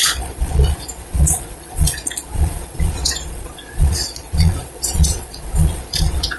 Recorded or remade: remade